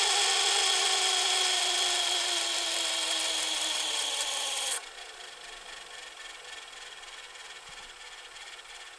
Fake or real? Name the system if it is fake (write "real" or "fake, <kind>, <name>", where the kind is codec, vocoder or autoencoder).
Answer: real